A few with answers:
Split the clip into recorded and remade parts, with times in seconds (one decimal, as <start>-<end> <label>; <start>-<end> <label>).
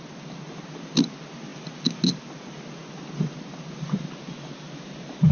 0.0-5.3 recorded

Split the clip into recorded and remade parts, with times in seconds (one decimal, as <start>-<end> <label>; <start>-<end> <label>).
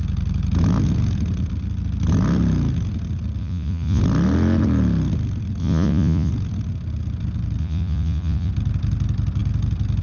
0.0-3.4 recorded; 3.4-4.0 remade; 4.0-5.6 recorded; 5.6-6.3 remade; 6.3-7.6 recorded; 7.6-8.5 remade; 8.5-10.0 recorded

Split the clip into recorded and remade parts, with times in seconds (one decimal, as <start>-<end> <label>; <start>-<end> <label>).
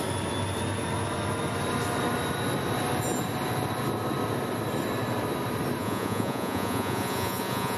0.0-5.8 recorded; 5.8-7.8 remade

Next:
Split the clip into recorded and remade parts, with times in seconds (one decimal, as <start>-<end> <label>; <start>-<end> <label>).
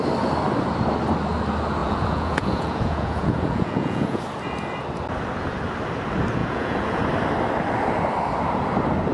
0.0-1.8 recorded; 1.8-4.2 remade; 4.2-6.4 recorded; 6.4-7.0 remade; 7.0-9.1 recorded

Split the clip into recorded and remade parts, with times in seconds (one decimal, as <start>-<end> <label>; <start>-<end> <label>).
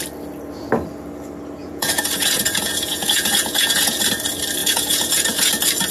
0.0-1.6 recorded; 1.6-4.0 remade; 4.0-4.6 recorded; 4.6-5.5 remade; 5.5-5.9 recorded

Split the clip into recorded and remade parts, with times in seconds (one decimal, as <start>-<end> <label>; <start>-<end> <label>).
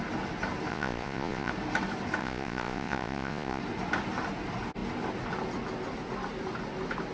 0.0-0.7 recorded; 0.7-1.5 remade; 1.5-2.2 recorded; 2.2-3.6 remade; 3.6-7.1 recorded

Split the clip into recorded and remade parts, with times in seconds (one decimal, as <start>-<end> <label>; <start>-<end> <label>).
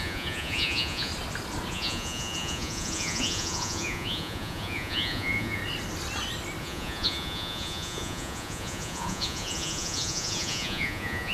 0.0-1.1 remade; 1.1-1.7 recorded; 1.7-5.6 remade; 5.6-6.6 recorded; 6.6-11.3 remade